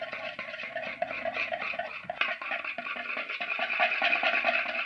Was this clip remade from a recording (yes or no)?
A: no